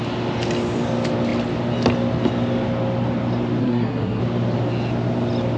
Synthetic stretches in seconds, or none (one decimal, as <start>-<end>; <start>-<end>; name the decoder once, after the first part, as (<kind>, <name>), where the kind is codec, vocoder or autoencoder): 3.6-4.2 (codec, SNAC)